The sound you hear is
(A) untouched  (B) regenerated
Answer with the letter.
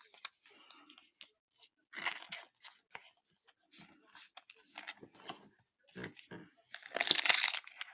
A